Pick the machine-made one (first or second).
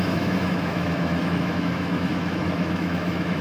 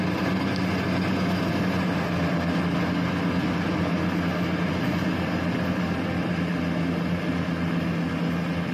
first